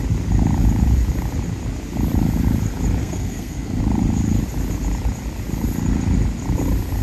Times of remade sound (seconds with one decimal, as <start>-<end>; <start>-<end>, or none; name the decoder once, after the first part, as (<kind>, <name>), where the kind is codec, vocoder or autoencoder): 3.0-3.8 (codec, SNAC)